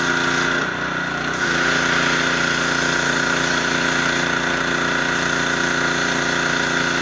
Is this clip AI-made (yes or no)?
no